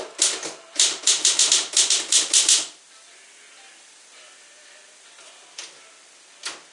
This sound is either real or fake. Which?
fake